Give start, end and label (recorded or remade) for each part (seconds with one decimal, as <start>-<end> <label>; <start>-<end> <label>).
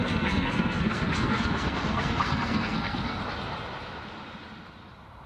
0.0-3.2 remade; 3.2-5.3 recorded